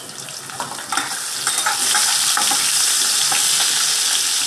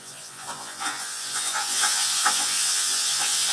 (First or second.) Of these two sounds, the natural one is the first